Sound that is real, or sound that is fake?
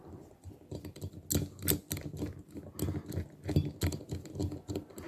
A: real